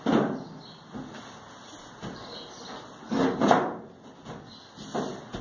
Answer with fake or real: real